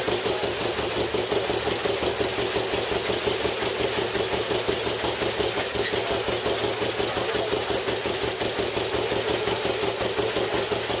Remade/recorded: recorded